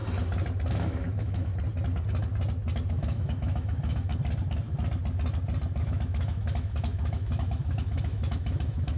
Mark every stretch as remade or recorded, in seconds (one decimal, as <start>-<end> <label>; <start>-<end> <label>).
0.0-0.7 recorded; 0.7-1.5 remade; 1.5-2.9 recorded; 2.9-4.1 remade; 4.1-5.8 recorded; 5.8-9.0 remade